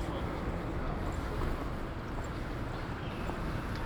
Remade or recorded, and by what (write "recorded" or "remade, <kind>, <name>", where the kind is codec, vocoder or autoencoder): recorded